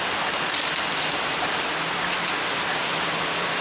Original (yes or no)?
yes